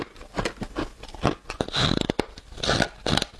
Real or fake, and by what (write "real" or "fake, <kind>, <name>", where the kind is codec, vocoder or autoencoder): real